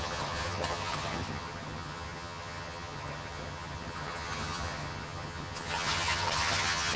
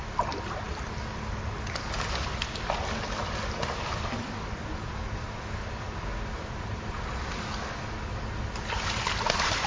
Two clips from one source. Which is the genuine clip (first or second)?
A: second